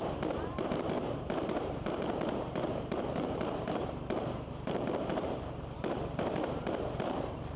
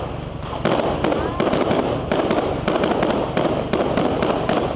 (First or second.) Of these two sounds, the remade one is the first